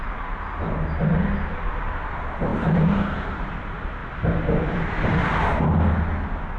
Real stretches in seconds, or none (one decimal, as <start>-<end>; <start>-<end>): 0.0-4.0; 5.6-6.6